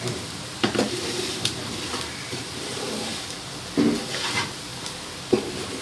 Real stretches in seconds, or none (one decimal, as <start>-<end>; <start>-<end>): 3.1-4.2